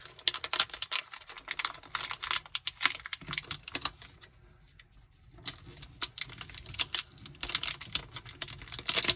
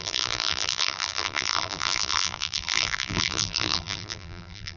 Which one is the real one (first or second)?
first